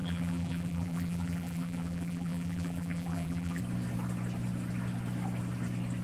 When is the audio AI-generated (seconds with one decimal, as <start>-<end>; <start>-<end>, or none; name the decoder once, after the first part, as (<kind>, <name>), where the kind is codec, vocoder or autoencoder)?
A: 0.0-3.6 (vocoder, BigVGAN v2)